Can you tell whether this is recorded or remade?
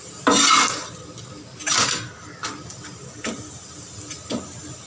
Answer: recorded